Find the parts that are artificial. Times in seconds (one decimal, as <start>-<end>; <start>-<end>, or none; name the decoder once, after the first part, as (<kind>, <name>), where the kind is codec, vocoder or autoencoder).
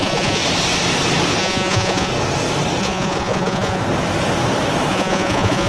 0.0-0.4 (vocoder, Vocos); 1.4-2.1; 2.8-3.8; 4.9-5.7